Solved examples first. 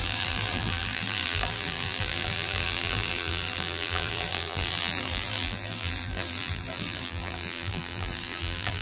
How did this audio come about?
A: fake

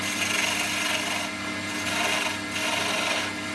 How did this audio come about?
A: real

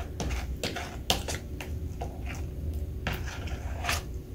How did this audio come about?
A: real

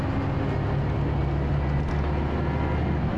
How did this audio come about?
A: real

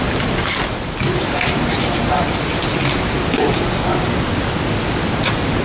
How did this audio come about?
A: real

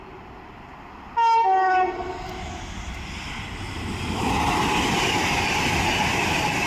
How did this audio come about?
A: real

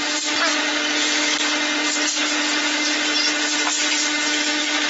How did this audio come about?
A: real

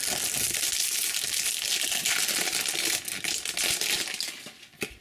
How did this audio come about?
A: real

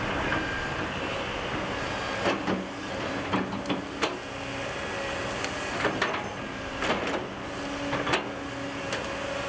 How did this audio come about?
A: real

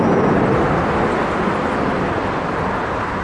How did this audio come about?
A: real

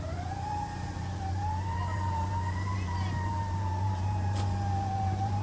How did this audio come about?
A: fake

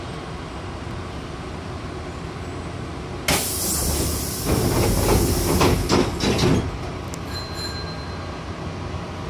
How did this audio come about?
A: real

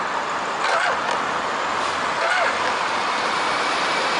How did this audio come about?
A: fake